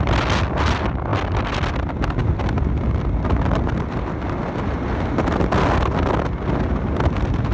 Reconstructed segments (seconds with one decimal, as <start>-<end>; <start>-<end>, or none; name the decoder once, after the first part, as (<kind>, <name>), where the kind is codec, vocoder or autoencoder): none